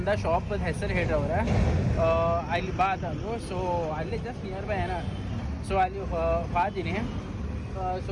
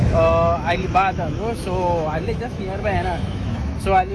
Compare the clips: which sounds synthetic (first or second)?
second